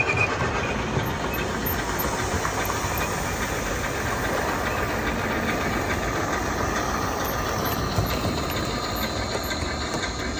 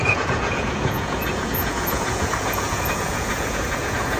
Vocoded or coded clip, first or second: second